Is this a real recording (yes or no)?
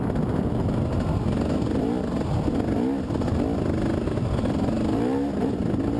yes